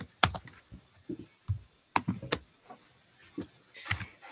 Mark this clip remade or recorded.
recorded